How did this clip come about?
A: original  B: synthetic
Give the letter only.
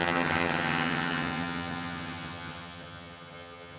B